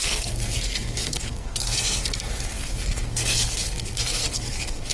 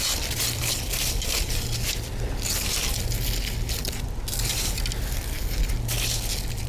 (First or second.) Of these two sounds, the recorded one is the second